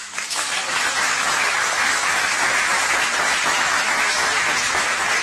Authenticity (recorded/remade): remade